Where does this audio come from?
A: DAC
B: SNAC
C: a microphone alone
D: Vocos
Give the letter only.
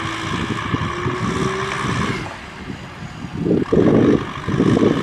C